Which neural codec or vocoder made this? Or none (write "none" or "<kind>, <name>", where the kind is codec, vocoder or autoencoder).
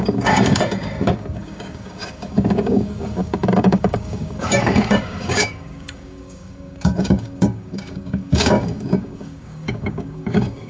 codec, DAC